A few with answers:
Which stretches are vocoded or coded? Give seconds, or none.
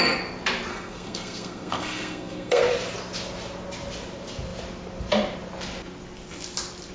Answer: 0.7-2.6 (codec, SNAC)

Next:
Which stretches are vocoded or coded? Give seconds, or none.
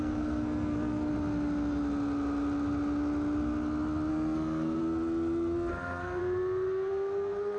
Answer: 0.0-1.1 (codec, SNAC); 4.1-4.8; 5.7-6.2; 6.9-7.6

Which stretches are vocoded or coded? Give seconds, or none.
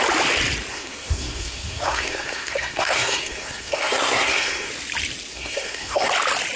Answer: 0.7-4.7 (codec, SNAC); 5.3-6.1